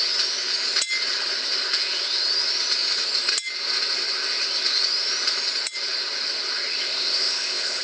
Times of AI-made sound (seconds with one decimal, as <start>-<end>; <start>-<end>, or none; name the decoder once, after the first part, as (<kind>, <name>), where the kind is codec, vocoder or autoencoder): 6.8-7.8 (codec, ZipCodec)